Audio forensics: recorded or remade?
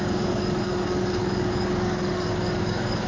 remade